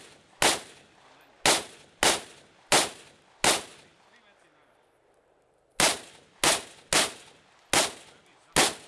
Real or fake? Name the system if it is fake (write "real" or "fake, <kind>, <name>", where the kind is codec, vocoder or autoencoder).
real